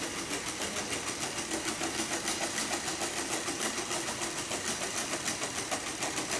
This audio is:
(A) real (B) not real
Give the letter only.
A